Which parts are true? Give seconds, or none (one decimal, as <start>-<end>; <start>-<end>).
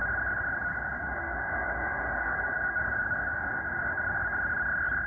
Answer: 0.0-0.7; 3.8-5.1